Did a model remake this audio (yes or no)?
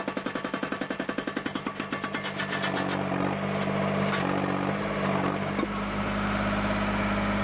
no